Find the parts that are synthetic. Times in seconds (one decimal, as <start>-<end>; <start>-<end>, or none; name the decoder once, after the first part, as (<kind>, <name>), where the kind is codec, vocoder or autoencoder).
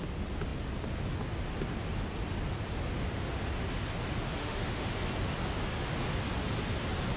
4.4-4.9 (autoencoder, DAC-VAE)